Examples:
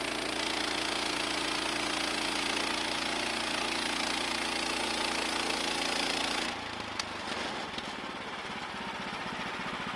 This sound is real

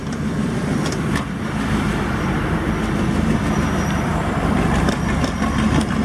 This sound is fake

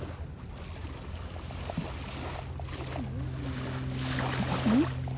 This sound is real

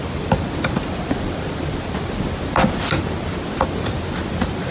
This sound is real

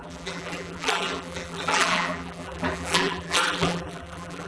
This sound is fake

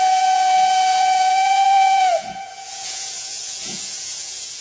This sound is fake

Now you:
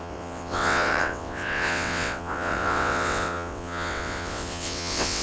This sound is fake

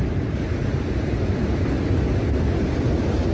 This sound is real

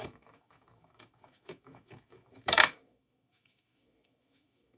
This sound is fake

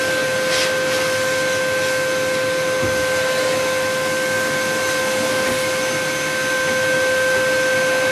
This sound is real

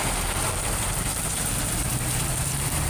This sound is fake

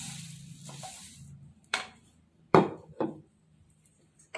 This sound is fake